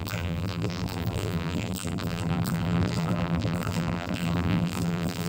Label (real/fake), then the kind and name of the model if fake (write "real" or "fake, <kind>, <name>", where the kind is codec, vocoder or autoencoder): fake, vocoder, BigVGAN v2